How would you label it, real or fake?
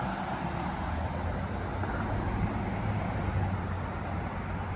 real